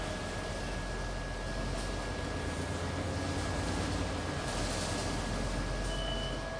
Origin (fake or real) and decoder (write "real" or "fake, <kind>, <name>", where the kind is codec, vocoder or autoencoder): real